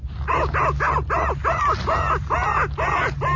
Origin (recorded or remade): recorded